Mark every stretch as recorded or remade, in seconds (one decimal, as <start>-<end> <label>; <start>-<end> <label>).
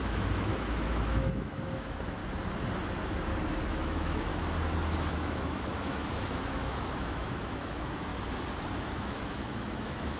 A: 0.0-2.2 remade; 2.2-3.7 recorded; 3.7-4.3 remade; 4.3-5.1 recorded; 5.1-8.1 remade; 8.1-8.8 recorded; 8.8-10.2 remade